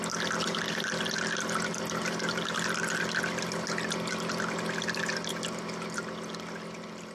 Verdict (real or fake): real